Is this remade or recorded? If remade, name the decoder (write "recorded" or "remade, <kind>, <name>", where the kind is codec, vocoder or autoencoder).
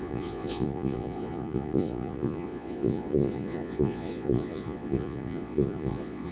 remade, vocoder, Vocos